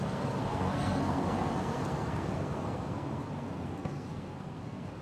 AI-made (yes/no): yes